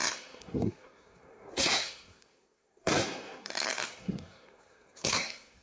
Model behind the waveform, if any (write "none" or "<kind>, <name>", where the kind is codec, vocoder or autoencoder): codec, SNAC